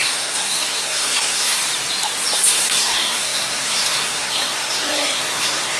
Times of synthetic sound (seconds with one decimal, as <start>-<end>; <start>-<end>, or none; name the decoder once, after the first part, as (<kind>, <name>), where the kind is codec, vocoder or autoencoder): 0.0-1.6 (codec, SNAC); 2.5-5.8